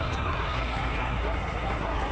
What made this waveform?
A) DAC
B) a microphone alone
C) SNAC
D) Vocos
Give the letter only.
C